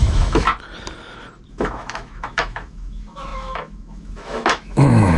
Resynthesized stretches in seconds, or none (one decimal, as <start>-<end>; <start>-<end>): 0.0-0.5; 1.5-5.2